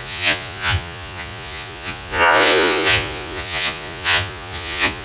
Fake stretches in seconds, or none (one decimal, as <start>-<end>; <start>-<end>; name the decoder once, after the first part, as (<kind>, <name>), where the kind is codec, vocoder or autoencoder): 0.0-5.0 (vocoder, Vocos)